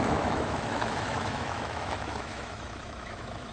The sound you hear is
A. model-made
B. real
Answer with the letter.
A